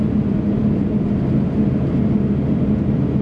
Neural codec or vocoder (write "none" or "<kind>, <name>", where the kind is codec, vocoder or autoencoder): none